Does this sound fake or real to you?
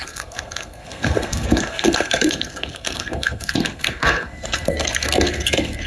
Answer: fake